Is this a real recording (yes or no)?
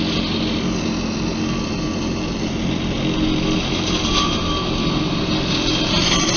yes